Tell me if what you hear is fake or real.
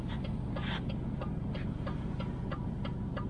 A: real